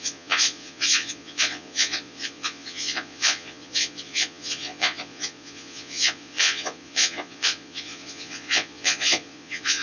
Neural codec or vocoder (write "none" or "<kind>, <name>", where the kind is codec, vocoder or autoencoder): vocoder, Vocos